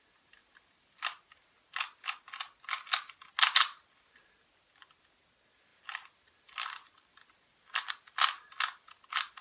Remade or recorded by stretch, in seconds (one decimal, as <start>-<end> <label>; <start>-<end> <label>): 0.0-9.4 recorded